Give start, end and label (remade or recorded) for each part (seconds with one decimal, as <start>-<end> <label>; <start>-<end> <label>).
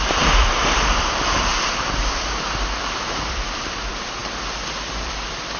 0.0-5.6 remade